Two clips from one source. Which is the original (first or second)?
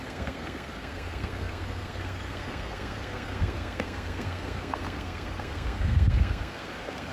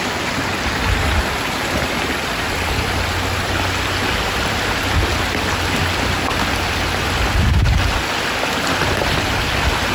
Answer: second